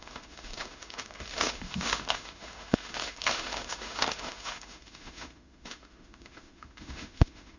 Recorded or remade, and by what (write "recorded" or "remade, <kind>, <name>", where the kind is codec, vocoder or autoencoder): remade, autoencoder, DAC-VAE